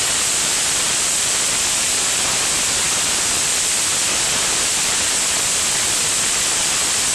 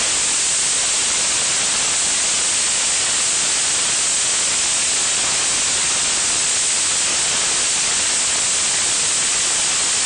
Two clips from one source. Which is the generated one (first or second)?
first